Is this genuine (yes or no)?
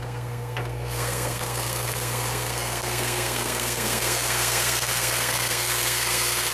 no